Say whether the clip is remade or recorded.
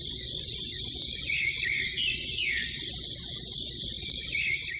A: remade